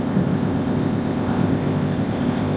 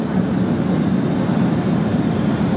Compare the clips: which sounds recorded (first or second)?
second